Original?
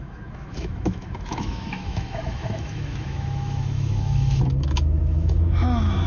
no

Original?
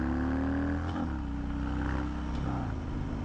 yes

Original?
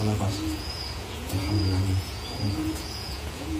no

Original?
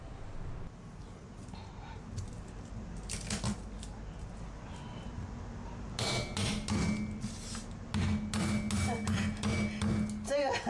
yes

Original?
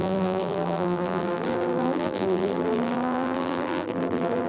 no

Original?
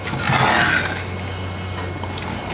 yes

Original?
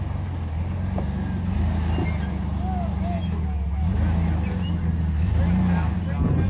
yes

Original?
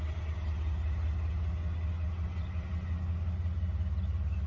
yes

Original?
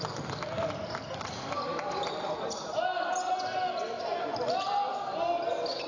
yes